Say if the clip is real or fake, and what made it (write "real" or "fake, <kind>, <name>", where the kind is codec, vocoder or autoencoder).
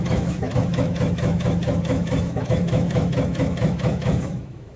fake, autoencoder, DAC-VAE